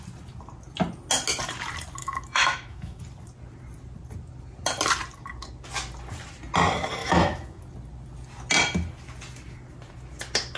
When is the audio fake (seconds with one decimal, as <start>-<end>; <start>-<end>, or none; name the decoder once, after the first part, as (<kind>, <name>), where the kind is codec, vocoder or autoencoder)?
2.0-3.0 (autoencoder, DAC-VAE); 7.0-7.6